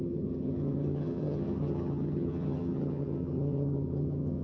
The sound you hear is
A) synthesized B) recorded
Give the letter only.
A